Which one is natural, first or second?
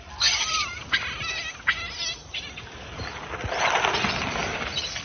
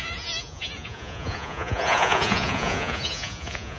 first